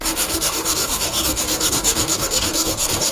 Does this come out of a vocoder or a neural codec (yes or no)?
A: yes